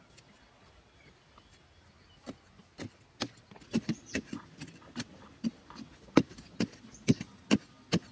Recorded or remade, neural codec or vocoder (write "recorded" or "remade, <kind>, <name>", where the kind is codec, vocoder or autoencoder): recorded